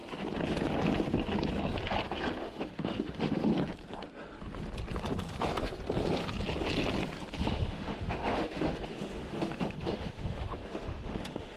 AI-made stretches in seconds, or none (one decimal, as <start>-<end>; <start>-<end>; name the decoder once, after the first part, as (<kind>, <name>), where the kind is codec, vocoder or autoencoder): 2.4-3.5 (autoencoder, DAC-VAE); 7.4-11.6